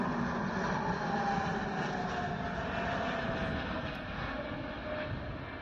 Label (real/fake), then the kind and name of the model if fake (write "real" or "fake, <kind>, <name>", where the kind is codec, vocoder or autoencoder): real